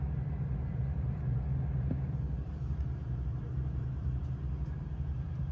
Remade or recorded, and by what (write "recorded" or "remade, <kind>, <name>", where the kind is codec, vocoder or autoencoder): remade, vocoder, BigVGAN v2